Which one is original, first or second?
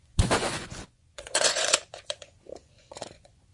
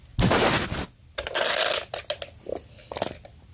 second